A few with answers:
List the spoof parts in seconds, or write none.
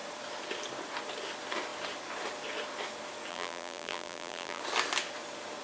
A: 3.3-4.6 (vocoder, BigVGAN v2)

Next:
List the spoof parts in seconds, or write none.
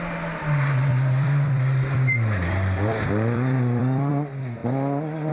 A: 0.9-4.1 (vocoder, BigVGAN v2); 4.6-5.3